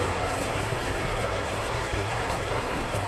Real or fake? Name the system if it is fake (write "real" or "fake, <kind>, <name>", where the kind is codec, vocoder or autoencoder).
fake, codec, SNAC